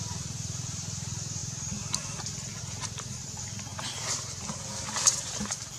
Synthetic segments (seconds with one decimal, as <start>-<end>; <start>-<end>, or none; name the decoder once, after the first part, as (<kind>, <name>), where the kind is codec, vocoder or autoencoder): 0.0-1.4 (vocoder, BigVGAN v2); 2.6-5.8